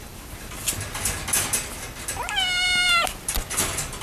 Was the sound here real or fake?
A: real